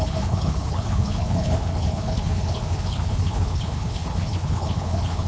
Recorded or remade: remade